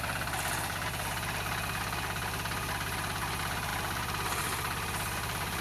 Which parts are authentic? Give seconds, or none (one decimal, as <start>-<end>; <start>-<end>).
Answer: 0.0-5.6